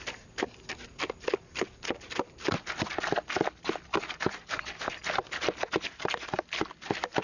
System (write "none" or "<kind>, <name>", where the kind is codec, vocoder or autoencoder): none